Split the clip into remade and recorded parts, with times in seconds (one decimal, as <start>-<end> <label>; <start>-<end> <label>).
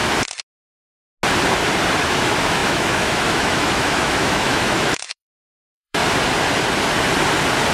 0.0-2.0 recorded; 2.0-6.0 remade; 6.0-7.7 recorded